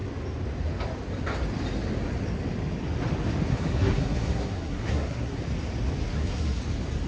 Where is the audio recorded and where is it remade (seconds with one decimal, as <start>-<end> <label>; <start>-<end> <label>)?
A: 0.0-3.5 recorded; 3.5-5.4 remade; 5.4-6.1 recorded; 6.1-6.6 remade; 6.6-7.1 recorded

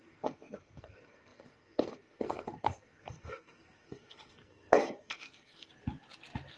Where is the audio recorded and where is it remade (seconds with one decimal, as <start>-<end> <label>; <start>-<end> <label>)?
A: 0.0-5.7 remade; 5.7-6.6 recorded

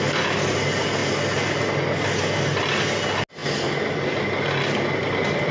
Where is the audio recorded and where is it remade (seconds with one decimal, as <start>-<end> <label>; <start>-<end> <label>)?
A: 0.0-5.5 recorded

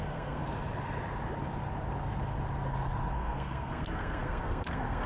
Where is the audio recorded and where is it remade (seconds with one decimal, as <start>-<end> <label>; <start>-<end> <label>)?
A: 0.0-0.4 remade; 0.4-3.1 recorded; 3.1-5.1 remade

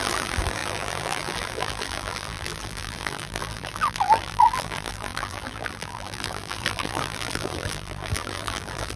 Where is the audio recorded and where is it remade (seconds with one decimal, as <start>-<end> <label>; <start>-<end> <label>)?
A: 0.0-9.0 remade

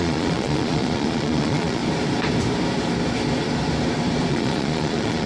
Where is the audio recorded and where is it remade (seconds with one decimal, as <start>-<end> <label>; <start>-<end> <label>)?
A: 0.0-1.8 remade; 1.8-4.3 recorded; 4.3-5.3 remade

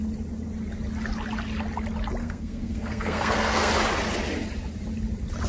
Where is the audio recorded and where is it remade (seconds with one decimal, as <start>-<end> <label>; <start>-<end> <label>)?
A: 0.0-2.2 recorded; 2.2-3.7 remade; 3.7-5.5 recorded

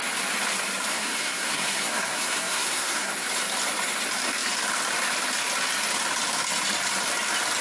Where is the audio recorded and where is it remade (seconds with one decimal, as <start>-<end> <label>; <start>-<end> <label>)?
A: 0.0-0.9 recorded; 0.9-3.1 remade; 3.1-7.6 recorded